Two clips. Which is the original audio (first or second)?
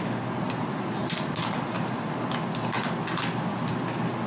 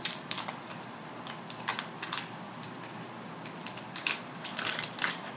first